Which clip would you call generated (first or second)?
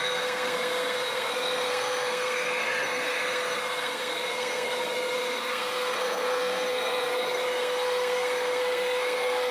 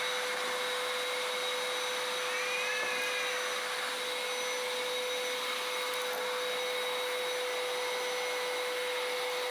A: first